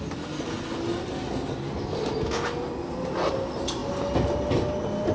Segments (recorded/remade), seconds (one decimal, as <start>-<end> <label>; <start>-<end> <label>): 0.0-5.1 recorded